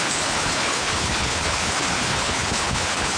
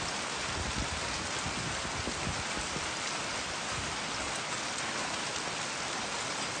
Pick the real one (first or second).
second